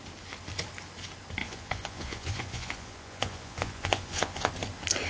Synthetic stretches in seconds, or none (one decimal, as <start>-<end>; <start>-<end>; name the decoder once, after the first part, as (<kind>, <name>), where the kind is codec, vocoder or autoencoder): 1.4-4.5 (vocoder, Vocos)